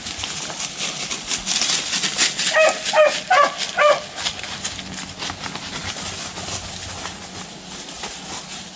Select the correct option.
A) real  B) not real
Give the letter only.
A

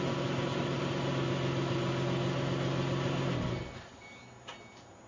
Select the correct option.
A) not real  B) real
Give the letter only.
B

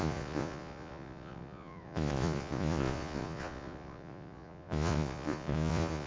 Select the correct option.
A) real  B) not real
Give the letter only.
B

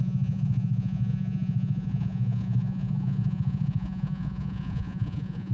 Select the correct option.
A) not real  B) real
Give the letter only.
A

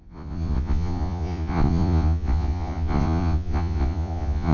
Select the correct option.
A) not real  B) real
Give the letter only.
A